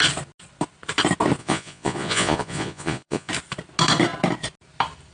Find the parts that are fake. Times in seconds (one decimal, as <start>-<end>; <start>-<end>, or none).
1.4-3.3